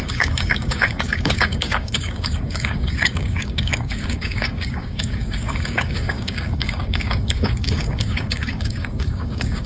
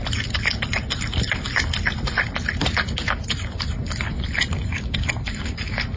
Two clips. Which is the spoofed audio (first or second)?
first